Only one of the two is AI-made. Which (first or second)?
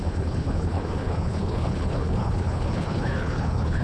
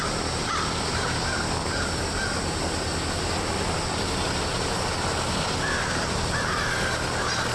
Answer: first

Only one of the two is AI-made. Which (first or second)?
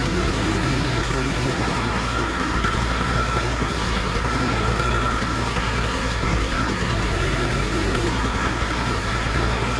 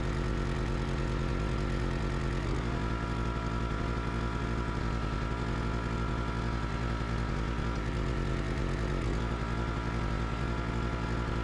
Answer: first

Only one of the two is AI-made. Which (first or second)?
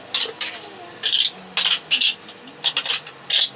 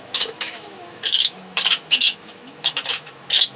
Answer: second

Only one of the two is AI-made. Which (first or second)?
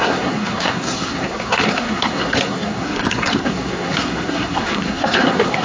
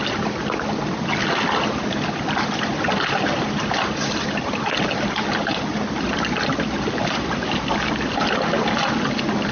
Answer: first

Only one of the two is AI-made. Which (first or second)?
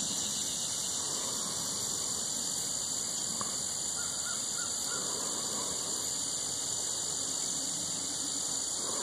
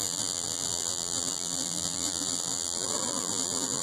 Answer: second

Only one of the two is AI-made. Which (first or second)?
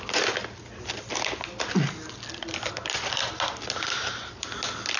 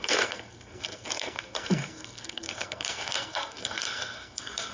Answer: second